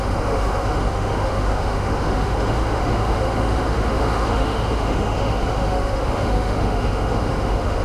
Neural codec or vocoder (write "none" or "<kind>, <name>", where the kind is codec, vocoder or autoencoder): autoencoder, DAC-VAE